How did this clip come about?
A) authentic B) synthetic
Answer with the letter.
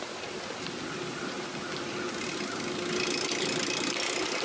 A